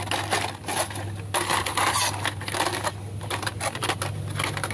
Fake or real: real